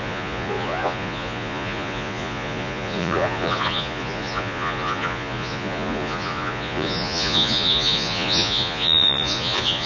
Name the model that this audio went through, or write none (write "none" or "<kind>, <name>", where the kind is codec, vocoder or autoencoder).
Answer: vocoder, Vocos